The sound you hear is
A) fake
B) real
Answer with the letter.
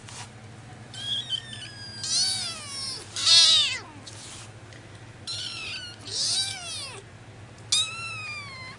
B